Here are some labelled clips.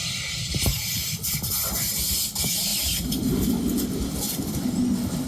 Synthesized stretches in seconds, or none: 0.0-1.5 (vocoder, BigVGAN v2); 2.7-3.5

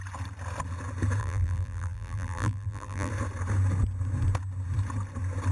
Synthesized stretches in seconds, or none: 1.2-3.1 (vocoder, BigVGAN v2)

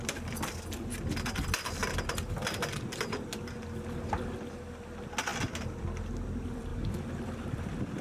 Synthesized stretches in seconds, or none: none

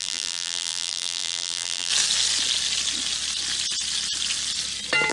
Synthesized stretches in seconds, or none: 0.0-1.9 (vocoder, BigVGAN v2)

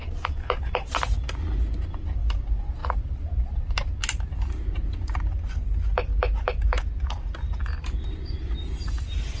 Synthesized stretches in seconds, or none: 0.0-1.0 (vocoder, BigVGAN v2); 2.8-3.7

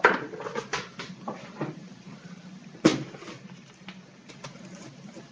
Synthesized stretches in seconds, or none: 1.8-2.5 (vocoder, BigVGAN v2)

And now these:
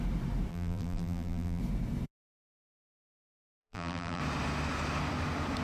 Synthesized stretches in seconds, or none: 0.5-1.6 (vocoder, BigVGAN v2); 3.6-4.2

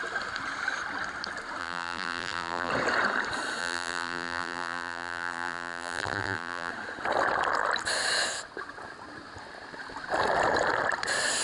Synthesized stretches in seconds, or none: 1.6-2.7 (vocoder, BigVGAN v2); 3.6-6.7